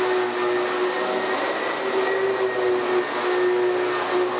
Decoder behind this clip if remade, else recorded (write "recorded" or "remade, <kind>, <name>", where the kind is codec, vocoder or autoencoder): recorded